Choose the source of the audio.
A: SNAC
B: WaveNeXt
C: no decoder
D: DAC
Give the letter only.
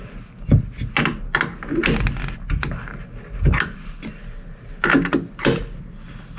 C